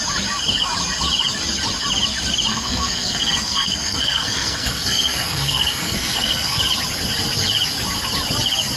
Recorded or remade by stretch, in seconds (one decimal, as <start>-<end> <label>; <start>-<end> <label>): 0.0-2.5 recorded; 2.5-6.6 remade; 6.6-8.8 recorded